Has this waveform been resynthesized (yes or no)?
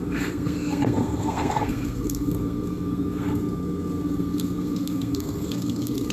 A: yes